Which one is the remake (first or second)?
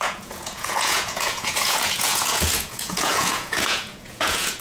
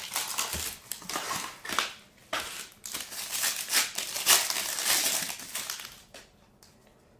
first